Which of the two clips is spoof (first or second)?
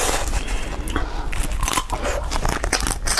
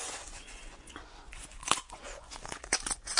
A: second